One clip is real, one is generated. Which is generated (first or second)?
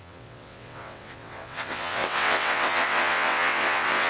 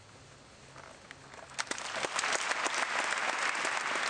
first